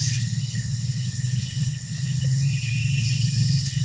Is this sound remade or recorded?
remade